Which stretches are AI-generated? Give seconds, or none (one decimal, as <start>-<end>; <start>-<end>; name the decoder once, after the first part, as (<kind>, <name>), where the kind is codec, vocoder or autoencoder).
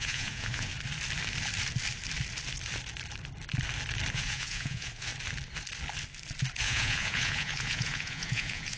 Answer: 0.0-0.7 (vocoder, Vocos); 4.1-5.1; 6.6-8.8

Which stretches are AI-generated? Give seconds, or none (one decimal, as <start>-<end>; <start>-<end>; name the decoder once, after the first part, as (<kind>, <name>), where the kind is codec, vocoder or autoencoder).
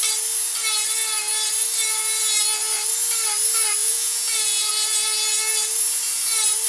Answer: 3.8-4.7 (vocoder, Vocos)